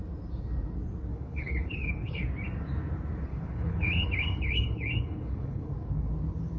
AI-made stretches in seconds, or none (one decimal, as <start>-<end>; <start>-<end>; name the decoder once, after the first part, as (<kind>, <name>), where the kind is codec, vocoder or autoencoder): 1.1-2.2 (codec, HILCodec); 3.3-5.7